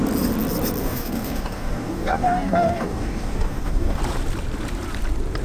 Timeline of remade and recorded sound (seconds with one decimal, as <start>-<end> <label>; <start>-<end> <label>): 0.0-0.8 recorded; 0.8-4.0 remade; 4.0-5.4 recorded